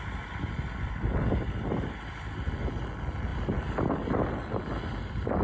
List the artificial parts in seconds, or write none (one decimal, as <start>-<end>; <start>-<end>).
none